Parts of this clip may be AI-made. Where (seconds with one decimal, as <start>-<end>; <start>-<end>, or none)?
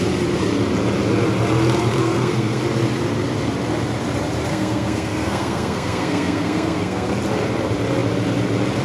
2.0-2.6; 4.5-7.1